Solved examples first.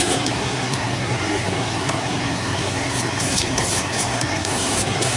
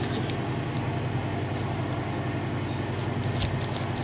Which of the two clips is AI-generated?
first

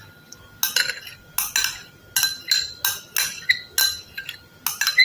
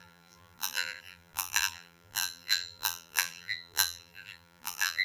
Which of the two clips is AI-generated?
second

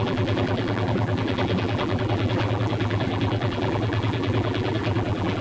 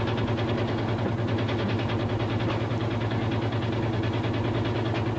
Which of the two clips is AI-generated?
first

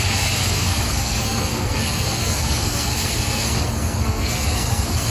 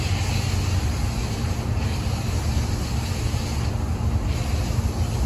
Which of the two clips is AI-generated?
first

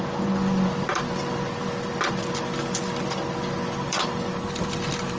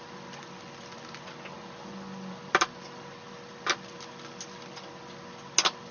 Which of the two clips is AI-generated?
first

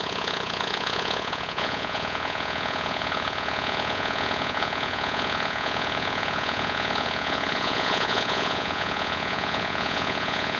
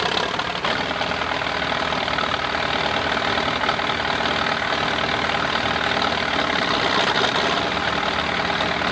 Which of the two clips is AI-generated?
first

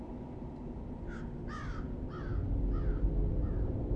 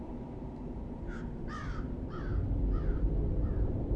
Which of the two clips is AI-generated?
second